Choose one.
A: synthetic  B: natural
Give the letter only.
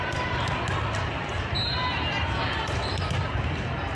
B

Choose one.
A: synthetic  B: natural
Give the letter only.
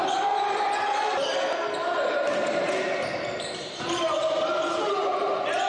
B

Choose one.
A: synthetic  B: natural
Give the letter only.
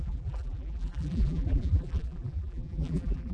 A